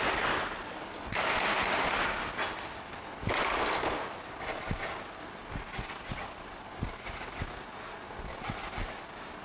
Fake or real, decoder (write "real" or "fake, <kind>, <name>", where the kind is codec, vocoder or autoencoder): real